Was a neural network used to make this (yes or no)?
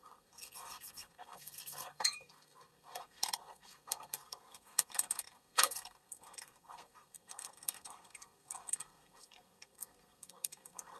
yes